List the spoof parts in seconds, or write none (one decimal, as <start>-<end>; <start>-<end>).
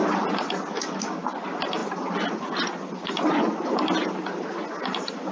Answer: 0.0-0.7; 1.8-3.6